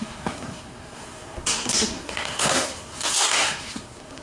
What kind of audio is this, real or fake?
fake